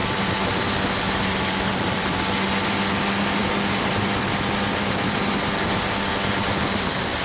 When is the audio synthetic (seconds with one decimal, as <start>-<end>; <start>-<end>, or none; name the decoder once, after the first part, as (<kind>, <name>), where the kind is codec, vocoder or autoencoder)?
0.0-0.7 (vocoder, BigVGAN v2); 1.7-2.3